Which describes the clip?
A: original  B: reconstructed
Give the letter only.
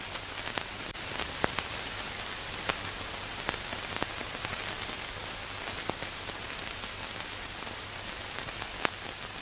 A